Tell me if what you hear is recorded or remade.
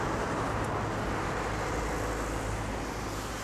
recorded